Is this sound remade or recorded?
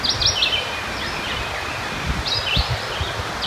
recorded